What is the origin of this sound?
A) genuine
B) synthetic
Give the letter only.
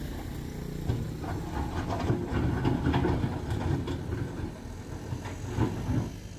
A